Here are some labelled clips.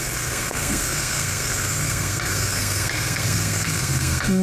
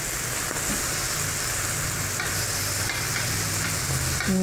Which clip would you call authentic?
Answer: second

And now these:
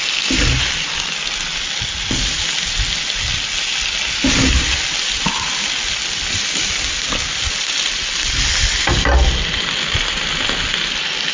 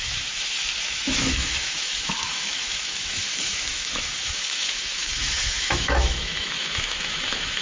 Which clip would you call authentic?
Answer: first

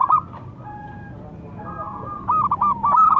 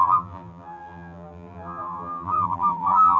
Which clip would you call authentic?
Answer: first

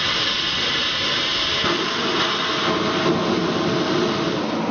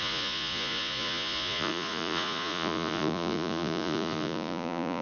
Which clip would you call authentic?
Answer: first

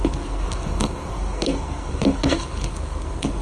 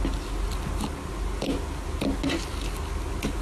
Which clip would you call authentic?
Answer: second